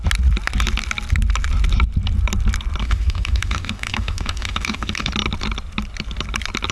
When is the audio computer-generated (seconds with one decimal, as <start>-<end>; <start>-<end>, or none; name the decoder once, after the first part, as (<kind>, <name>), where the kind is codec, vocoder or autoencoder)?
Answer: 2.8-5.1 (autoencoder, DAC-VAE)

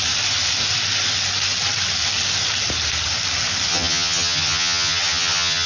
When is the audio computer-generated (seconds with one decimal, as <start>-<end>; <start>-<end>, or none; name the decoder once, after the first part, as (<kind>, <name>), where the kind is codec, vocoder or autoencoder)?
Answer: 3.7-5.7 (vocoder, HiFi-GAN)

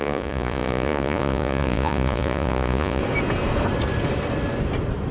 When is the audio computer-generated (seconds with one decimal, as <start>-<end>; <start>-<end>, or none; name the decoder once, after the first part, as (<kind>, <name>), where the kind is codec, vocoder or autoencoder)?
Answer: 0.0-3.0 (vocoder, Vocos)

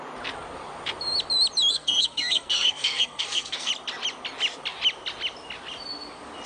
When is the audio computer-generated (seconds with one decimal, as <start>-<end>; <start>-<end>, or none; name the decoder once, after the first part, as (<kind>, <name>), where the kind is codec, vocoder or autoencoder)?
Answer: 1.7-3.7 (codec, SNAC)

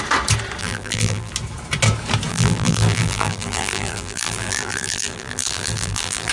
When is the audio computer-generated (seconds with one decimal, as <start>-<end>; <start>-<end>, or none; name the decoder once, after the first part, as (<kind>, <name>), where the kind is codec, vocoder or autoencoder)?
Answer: 0.6-1.3 (vocoder, BigVGAN v2); 2.3-6.3

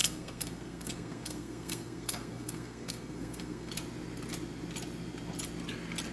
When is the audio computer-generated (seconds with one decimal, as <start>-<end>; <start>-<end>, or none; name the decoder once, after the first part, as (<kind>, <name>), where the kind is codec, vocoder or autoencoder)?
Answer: 0.0-3.7 (codec, SNAC)

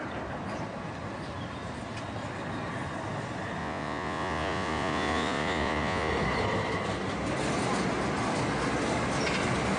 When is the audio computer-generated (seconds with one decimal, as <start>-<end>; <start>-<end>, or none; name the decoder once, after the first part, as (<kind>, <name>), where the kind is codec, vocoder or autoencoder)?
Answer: 3.6-6.1 (vocoder, Vocos)

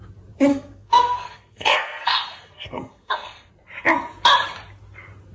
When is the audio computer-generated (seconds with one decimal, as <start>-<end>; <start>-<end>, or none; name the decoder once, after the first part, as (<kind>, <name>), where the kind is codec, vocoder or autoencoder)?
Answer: 0.5-3.5 (codec, SNAC)